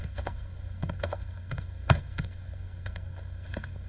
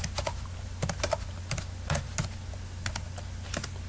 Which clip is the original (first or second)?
second